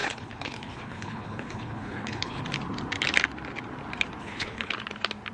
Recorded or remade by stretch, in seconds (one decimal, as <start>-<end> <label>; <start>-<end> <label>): 0.0-2.4 remade; 2.4-4.2 recorded; 4.2-4.7 remade; 4.7-5.3 recorded